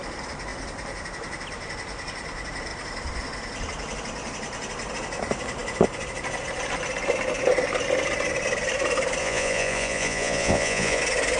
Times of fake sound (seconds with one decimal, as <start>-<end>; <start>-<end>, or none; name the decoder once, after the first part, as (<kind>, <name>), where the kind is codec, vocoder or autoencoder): 9.2-11.0 (vocoder, Vocos)